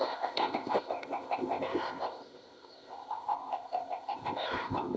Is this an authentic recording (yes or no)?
no